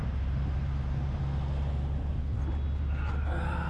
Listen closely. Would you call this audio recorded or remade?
recorded